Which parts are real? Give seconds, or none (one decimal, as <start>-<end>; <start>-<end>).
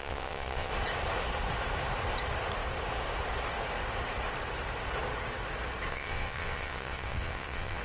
0.7-5.9